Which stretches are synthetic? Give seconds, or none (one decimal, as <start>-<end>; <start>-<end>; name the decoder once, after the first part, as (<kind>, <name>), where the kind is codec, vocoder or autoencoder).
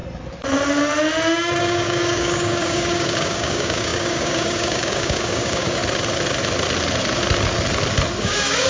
1.6-5.8 (codec, DAC); 8.2-8.7